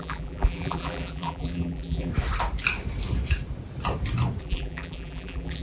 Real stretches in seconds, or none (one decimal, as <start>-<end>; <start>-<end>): 2.1-4.4